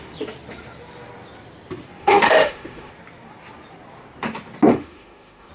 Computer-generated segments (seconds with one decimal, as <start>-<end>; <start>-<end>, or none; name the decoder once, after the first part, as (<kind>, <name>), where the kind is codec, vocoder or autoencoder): 2.0-2.9 (autoencoder, DAC-VAE); 4.7-5.5